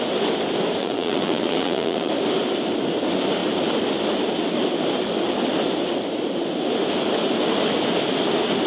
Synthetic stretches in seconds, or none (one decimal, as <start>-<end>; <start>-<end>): 0.8-2.1